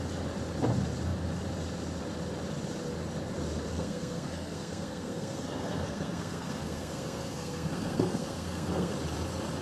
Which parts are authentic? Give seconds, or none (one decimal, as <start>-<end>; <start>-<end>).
0.0-3.7; 8.9-9.6

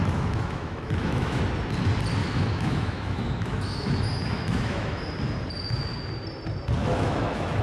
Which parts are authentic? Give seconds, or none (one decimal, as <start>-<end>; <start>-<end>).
1.4-2.2; 5.0-6.8

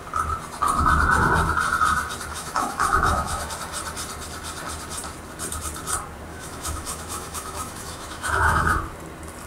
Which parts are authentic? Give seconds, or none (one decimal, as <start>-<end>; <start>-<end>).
0.0-2.3; 3.5-6.3; 8.7-9.5

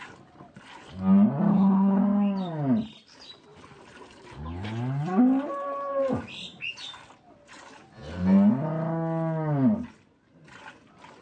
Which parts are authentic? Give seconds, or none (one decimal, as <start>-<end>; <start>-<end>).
0.0-1.5; 2.0-11.2

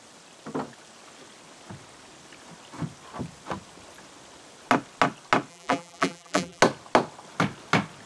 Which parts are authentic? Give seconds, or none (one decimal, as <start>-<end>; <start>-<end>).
0.0-5.5; 6.6-8.1

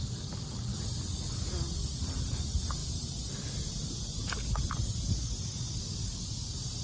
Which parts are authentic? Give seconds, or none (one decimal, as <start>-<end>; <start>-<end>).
0.0-6.8

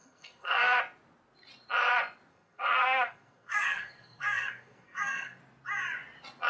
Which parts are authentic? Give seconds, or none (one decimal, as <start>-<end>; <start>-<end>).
0.8-2.3; 5.4-6.5